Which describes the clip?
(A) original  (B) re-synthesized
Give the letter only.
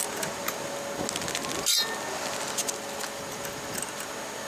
A